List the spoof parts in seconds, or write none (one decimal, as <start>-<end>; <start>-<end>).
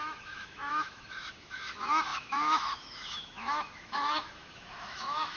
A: 0.0-5.4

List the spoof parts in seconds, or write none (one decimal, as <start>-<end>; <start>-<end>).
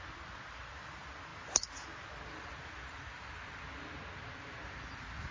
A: none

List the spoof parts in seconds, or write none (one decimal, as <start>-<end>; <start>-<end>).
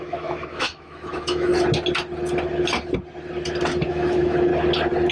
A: 0.0-1.5; 3.9-4.5